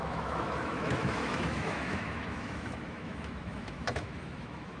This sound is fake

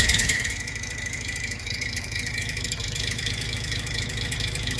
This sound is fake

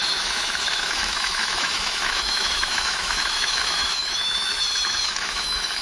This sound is fake